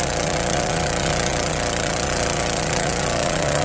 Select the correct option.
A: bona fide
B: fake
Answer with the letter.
B